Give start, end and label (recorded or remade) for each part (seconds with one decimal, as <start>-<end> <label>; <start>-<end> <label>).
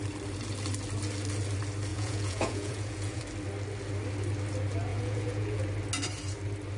0.0-1.9 recorded; 1.9-3.2 remade; 3.2-4.9 recorded; 4.9-5.6 remade; 5.6-6.8 recorded